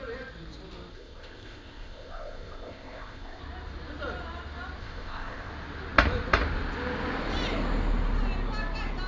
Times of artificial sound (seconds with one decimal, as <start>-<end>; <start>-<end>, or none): 0.9-3.4; 4.8-5.5